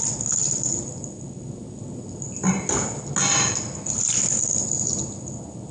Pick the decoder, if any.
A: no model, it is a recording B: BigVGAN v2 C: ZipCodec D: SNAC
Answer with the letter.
A